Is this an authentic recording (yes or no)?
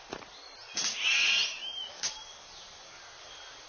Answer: yes